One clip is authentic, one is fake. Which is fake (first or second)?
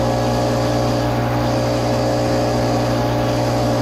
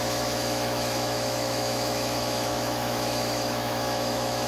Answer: second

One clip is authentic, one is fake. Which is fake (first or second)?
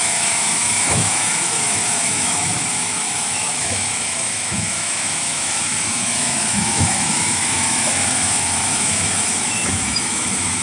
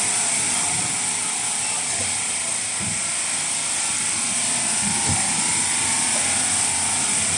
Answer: first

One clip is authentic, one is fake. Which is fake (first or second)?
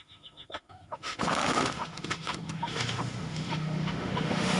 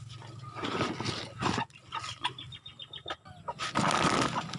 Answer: first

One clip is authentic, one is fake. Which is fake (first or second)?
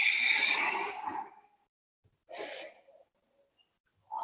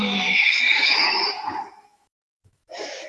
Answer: second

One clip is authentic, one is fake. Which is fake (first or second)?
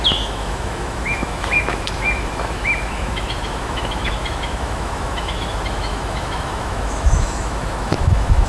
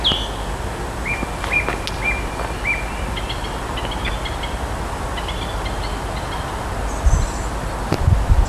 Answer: first